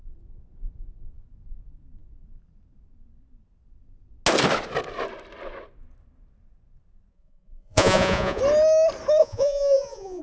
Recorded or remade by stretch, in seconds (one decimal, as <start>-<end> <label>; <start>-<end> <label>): 0.0-7.1 recorded; 7.1-8.4 remade; 8.4-9.2 recorded; 9.2-10.2 remade